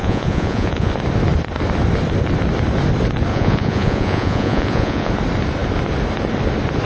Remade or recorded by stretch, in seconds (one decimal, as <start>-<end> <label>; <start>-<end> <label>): 0.0-0.9 remade; 0.9-3.3 recorded; 3.3-5.1 remade; 5.1-6.9 recorded